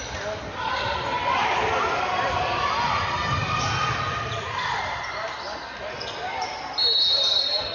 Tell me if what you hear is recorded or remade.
remade